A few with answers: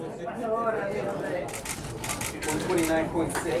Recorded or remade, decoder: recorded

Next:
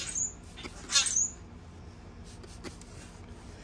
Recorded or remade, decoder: recorded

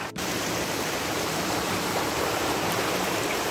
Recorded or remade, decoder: remade, vocoder, BigVGAN v2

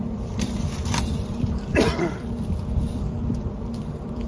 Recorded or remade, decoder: remade, vocoder, BigVGAN v2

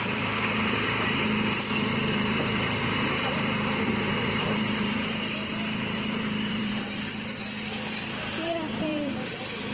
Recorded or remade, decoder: remade, vocoder, BigVGAN v2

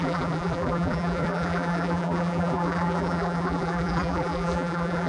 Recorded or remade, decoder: remade, vocoder, BigVGAN v2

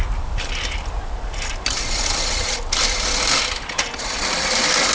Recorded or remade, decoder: recorded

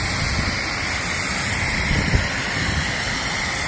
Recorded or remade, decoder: recorded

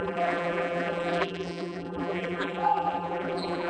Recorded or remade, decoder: remade, vocoder, BigVGAN v2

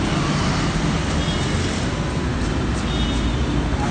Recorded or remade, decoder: recorded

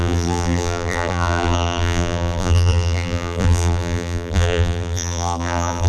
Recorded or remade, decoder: remade, vocoder, BigVGAN v2